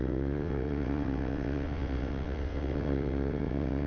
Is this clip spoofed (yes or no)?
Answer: yes